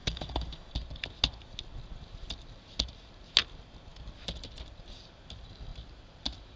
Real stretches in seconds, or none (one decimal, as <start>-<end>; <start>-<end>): 0.7-6.6